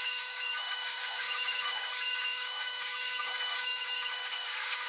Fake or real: fake